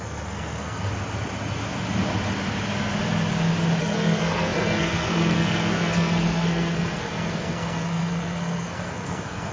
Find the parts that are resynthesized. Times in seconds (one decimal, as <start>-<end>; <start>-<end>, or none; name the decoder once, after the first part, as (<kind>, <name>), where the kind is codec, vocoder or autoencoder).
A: 0.0-0.9 (codec, SNAC); 3.8-9.5